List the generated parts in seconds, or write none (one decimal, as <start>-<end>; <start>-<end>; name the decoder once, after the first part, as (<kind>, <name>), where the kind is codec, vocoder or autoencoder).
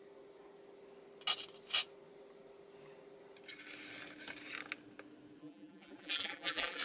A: 5.4-6.8 (vocoder, BigVGAN v2)